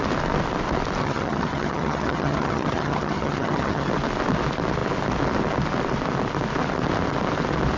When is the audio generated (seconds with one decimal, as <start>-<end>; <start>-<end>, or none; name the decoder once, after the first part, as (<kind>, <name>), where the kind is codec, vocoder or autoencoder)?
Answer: 1.0-3.9 (vocoder, HiFi-GAN)